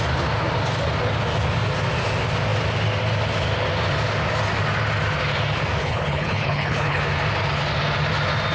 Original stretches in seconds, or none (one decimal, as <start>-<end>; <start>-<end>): 0.0-5.8; 7.0-8.5